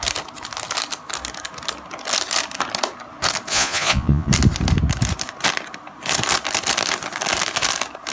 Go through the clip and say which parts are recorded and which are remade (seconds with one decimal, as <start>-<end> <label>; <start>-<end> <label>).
0.0-3.5 recorded; 3.5-4.3 remade; 4.3-8.1 recorded

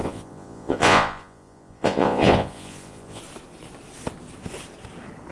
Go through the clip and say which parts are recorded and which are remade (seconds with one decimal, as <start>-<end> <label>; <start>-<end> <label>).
0.0-3.2 remade; 3.2-5.3 recorded

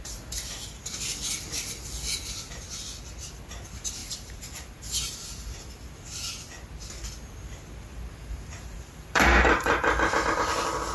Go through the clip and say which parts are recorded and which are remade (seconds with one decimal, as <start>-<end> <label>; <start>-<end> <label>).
0.0-4.0 recorded; 4.0-5.7 remade; 5.7-7.9 recorded; 7.9-10.5 remade; 10.5-10.9 recorded